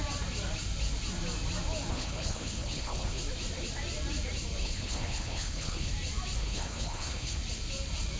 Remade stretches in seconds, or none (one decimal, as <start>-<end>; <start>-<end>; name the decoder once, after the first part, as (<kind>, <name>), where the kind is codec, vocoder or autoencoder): 1.9-3.2 (codec, HILCodec); 4.6-5.9; 6.4-7.4

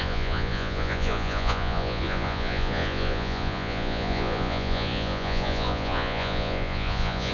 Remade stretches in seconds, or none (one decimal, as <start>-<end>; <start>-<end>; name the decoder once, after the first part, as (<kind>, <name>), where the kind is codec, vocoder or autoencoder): 0.0-7.3 (vocoder, Vocos)

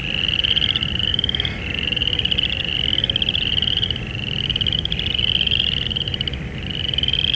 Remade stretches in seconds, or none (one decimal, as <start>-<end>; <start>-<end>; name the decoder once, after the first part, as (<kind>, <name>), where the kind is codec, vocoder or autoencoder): none

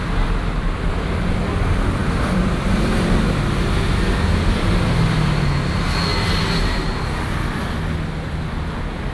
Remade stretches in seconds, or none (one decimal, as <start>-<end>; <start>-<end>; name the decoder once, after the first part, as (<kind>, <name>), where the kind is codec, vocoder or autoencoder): 2.0-3.4 (vocoder, BigVGAN v2); 6.1-7.0

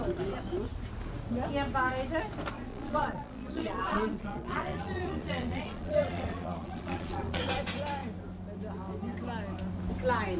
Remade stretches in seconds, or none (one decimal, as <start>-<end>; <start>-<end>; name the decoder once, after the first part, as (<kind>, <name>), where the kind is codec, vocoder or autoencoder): 2.7-7.4 (vocoder, Vocos)